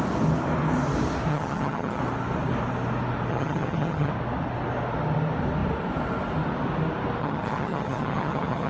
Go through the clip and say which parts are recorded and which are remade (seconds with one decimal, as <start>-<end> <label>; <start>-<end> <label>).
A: 0.0-1.3 recorded; 1.3-2.0 remade; 2.0-3.3 recorded; 3.3-4.1 remade; 4.1-7.2 recorded; 7.2-8.7 remade